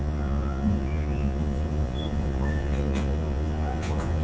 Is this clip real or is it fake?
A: fake